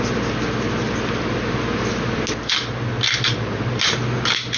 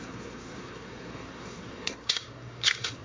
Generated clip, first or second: second